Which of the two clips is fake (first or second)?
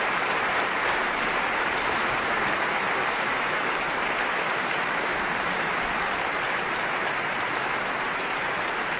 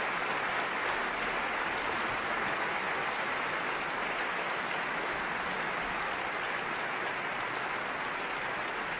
first